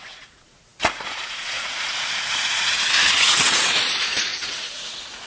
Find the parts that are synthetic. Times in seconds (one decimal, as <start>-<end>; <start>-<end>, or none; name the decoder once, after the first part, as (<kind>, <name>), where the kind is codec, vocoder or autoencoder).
0.0-5.3 (vocoder, Vocos)